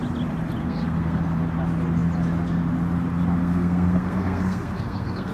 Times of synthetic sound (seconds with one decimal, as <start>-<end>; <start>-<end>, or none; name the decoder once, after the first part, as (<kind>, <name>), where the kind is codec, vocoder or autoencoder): 0.6-1.2 (codec, SNAC); 3.4-5.3